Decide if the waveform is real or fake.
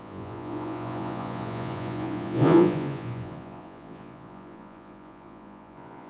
fake